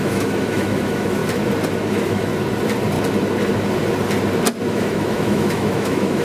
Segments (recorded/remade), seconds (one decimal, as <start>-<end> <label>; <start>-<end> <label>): 0.0-1.2 remade; 1.2-1.9 recorded; 1.9-2.3 remade; 2.3-4.7 recorded; 4.7-6.2 remade